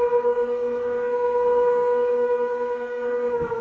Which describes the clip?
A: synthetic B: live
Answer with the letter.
A